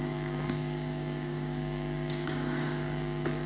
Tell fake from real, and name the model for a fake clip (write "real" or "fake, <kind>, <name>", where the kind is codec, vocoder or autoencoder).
fake, codec, DAC